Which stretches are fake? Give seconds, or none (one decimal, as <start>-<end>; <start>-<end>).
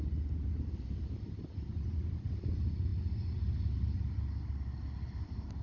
none